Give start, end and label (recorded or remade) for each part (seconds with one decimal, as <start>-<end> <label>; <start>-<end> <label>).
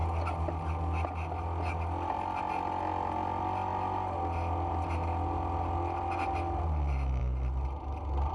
0.0-8.3 recorded